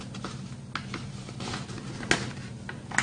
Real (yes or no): yes